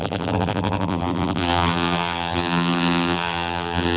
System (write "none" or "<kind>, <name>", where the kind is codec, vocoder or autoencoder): vocoder, BigVGAN v2